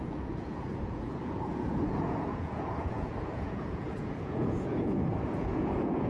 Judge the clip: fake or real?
fake